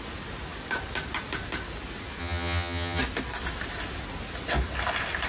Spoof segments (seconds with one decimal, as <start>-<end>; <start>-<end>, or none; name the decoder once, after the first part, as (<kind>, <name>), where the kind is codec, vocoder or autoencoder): 2.2-3.0 (vocoder, HiFi-GAN)